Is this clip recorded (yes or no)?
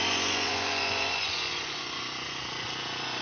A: no